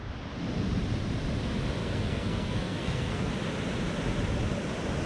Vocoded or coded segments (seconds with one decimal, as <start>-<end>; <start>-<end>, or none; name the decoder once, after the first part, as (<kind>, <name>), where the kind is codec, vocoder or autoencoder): 1.8-3.3 (codec, SNAC)